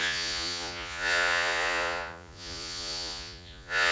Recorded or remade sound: remade